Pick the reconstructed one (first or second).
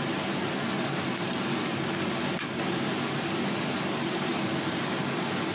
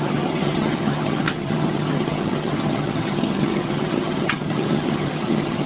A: second